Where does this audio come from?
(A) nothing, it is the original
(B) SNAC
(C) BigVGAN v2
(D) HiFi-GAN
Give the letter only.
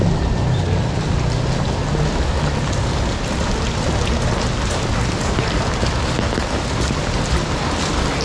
A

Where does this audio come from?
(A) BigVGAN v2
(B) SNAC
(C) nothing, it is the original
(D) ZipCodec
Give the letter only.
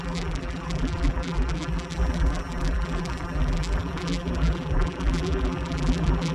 A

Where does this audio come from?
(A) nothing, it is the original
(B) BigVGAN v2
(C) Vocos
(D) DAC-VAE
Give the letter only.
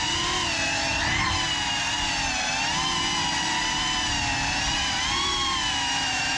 A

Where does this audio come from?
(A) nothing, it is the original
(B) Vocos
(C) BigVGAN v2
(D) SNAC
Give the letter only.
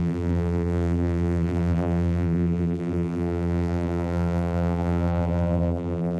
C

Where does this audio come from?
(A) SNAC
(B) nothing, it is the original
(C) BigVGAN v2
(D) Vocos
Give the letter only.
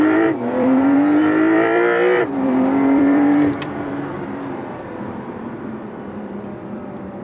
C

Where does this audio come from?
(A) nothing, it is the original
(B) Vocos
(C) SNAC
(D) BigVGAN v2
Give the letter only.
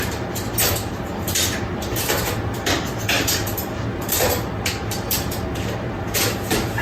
D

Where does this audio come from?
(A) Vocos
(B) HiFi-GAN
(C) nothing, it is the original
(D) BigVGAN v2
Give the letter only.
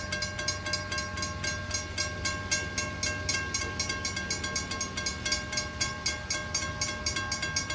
C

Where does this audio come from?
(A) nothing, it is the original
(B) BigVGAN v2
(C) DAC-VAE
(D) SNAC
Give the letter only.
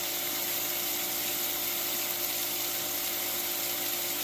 A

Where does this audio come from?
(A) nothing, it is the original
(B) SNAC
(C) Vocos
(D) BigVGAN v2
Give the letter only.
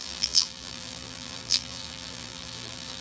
D